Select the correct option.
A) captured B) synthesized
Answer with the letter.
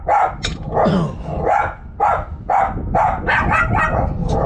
A